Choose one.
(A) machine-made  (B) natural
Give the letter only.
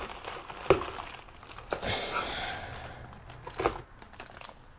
B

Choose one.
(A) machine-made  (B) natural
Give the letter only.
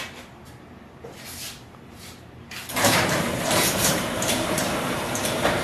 A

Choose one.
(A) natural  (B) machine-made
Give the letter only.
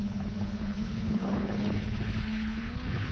B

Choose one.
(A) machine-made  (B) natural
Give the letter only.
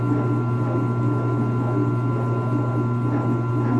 B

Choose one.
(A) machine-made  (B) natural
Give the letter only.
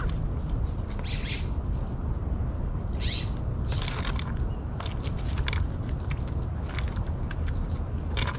B